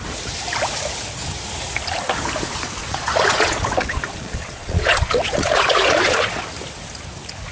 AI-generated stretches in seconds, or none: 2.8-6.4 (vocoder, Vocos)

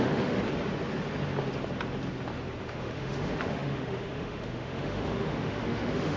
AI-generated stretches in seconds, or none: 0.0-0.4 (autoencoder, DAC-VAE); 2.6-6.2

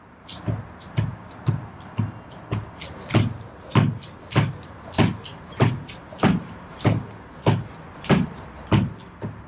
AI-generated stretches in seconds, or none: 5.3-7.0 (vocoder, BigVGAN v2)

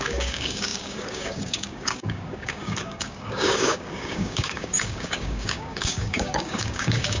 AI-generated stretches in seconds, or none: 0.0-7.2 (codec, DAC)

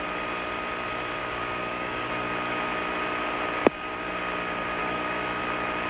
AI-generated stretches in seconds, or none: 1.2-2.1 (codec, DAC); 3.6-4.1; 4.8-5.4